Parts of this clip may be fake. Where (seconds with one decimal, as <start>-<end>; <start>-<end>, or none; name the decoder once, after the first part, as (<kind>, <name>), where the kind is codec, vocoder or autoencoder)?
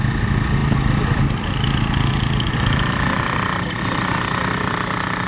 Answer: 0.6-3.8 (vocoder, BigVGAN v2)